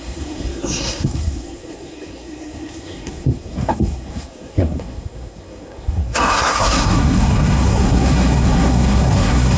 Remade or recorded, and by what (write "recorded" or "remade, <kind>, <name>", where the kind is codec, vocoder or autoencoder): remade, codec, SNAC